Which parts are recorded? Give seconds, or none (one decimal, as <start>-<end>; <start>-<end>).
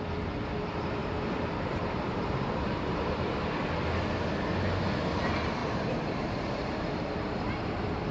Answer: 0.0-1.0; 3.0-5.6